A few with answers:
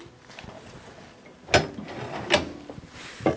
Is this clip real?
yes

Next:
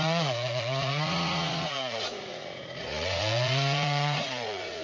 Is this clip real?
no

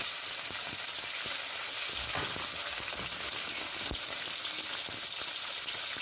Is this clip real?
yes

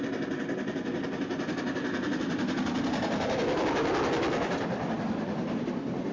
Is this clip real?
yes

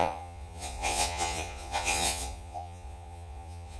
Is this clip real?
no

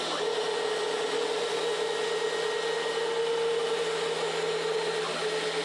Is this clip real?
yes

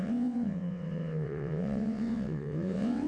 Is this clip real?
no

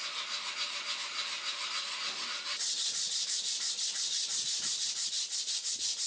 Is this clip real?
yes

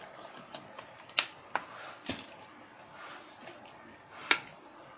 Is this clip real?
yes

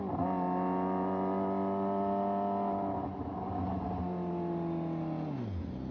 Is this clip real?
yes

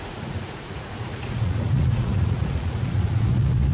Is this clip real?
no